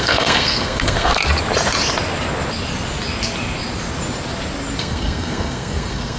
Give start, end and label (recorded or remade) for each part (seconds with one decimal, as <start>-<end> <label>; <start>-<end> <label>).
0.0-1.1 remade; 1.1-4.8 recorded; 4.8-6.2 remade